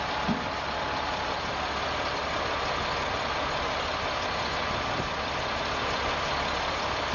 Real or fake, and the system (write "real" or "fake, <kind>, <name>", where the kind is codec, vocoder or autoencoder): real